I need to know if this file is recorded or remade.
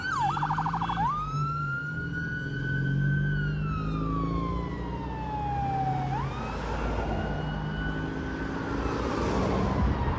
recorded